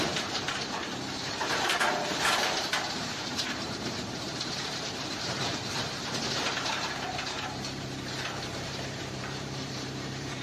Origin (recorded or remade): remade